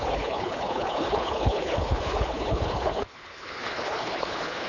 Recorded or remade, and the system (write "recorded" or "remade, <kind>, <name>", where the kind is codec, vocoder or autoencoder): remade, codec, HILCodec